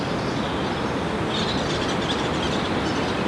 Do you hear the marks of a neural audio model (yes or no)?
no